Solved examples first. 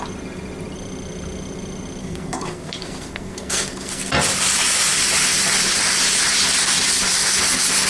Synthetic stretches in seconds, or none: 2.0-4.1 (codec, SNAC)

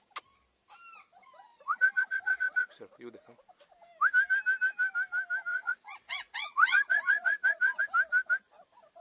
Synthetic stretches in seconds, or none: 1.5-2.7 (vocoder, Vocos); 5.5-7.8

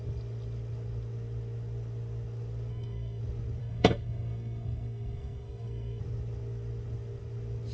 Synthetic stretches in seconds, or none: 2.7-3.2 (codec, SNAC); 3.6-6.0

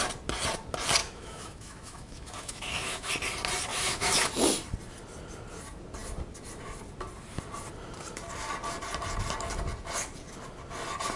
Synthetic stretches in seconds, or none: 1.0-3.1 (autoencoder, DAC-VAE); 3.7-4.3

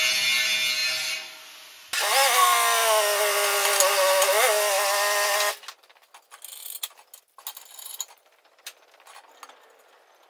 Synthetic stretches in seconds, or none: none

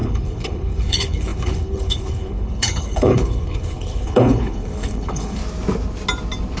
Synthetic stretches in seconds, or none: 0.0-5.4 (codec, HILCodec)

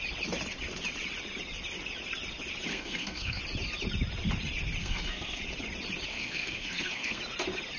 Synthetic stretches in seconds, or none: 2.7-3.4 (codec, SNAC); 4.8-5.4; 6.1-7.2